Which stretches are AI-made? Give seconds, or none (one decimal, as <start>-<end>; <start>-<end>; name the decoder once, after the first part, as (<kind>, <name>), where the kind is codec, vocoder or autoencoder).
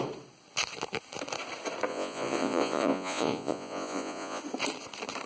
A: 1.9-4.4 (vocoder, Vocos)